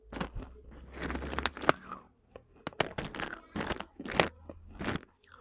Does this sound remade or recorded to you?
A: recorded